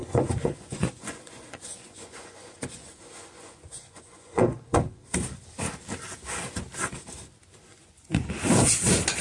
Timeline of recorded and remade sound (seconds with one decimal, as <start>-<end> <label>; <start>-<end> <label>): 0.0-5.0 remade; 5.0-7.7 recorded; 7.7-8.3 remade; 8.3-9.2 recorded

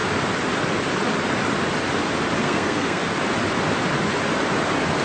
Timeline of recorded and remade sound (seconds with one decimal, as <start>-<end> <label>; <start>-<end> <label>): 0.0-2.4 recorded; 2.4-3.0 remade; 3.0-5.0 recorded

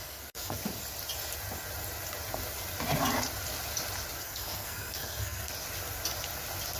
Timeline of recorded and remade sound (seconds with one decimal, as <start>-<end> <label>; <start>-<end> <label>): 0.0-0.6 remade; 0.6-4.2 recorded; 4.2-5.5 remade; 5.5-6.8 recorded